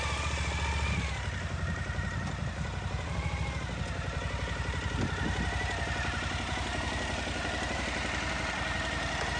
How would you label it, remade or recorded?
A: recorded